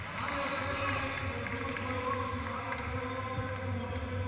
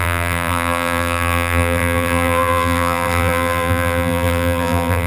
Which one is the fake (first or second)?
second